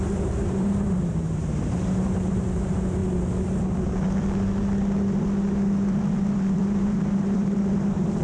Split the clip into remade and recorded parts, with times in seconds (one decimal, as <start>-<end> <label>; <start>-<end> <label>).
0.0-3.0 remade; 3.0-6.3 recorded; 6.3-8.2 remade